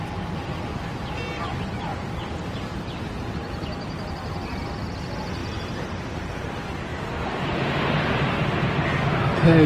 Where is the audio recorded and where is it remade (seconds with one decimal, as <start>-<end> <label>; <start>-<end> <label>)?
0.0-9.7 recorded